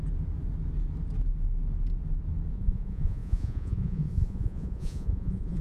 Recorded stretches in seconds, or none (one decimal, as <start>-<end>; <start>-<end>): 0.0-2.5